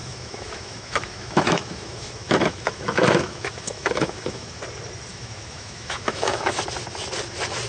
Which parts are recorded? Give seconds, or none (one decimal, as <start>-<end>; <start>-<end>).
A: 4.6-5.1; 6.6-7.7